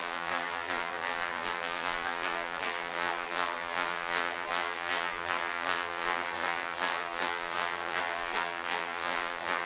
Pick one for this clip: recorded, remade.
remade